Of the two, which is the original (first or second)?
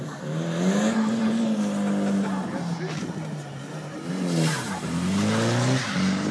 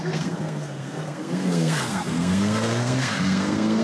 first